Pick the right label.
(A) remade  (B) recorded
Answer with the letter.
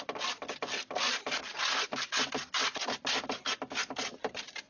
B